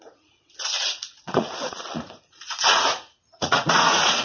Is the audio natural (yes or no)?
no